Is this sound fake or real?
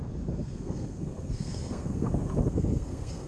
fake